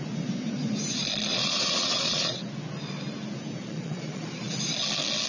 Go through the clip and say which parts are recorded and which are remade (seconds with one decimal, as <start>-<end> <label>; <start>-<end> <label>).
0.0-1.3 recorded; 1.3-2.3 remade; 2.3-3.6 recorded; 3.6-4.5 remade; 4.5-5.3 recorded